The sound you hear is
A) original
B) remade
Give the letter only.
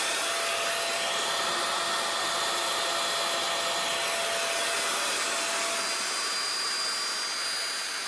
A